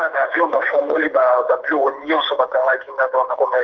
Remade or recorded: remade